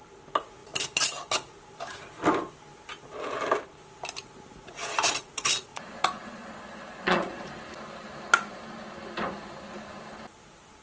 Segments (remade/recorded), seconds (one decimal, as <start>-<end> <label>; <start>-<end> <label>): 0.0-5.7 recorded; 5.7-7.5 remade; 7.5-10.8 recorded